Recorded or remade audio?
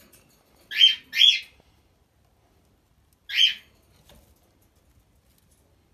recorded